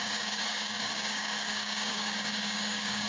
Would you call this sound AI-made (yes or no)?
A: yes